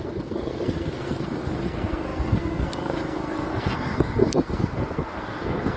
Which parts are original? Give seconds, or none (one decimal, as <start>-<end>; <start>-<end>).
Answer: none